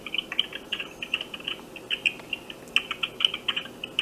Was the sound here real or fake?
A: real